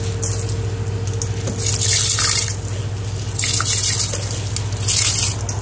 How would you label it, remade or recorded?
recorded